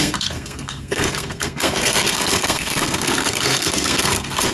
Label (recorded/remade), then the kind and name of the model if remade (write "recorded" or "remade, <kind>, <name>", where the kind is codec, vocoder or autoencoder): remade, codec, SNAC